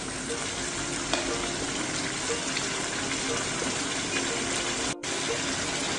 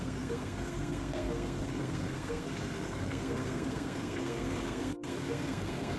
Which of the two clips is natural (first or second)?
first